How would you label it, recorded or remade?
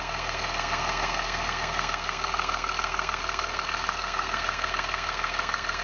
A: remade